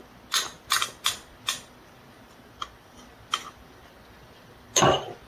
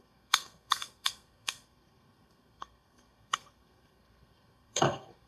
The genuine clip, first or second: first